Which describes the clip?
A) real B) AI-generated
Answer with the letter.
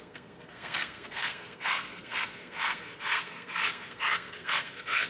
B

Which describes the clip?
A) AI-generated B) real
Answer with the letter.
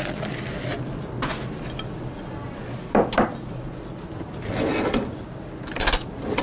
B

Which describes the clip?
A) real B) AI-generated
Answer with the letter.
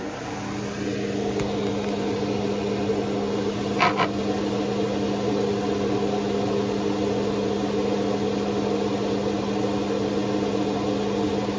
A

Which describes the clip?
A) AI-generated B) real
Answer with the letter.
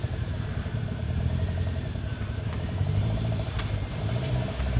A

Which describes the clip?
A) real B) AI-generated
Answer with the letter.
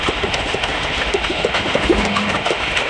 B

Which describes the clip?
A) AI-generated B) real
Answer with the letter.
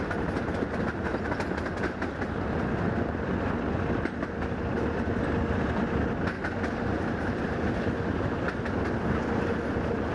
B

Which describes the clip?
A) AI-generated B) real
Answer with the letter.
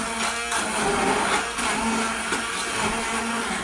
B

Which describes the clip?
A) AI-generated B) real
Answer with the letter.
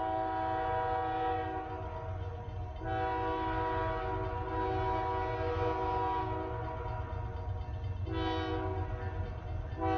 B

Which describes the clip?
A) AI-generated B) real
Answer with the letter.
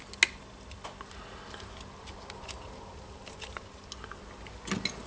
B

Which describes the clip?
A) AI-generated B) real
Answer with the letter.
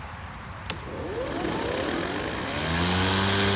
B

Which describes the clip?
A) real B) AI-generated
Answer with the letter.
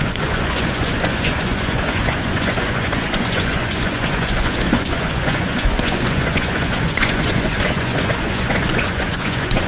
B